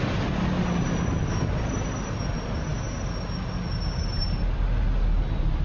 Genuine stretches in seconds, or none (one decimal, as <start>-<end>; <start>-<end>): 0.0-5.6